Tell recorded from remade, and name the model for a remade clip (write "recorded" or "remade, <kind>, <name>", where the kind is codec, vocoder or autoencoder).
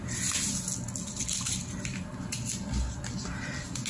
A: recorded